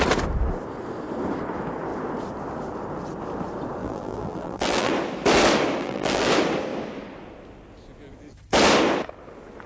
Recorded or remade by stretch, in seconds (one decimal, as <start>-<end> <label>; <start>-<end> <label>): 0.0-3.8 recorded; 3.8-4.9 remade; 4.9-5.8 recorded; 5.8-6.3 remade; 6.3-9.7 recorded